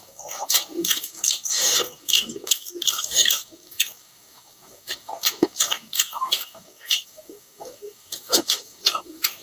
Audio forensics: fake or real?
fake